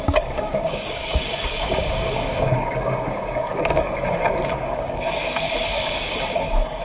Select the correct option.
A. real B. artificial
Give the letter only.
B